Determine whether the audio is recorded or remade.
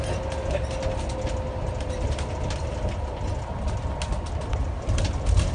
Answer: recorded